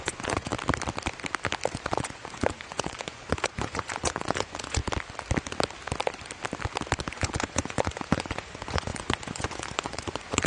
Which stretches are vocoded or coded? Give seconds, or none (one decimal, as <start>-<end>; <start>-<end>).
0.0-0.5; 1.7-4.8; 7.1-10.5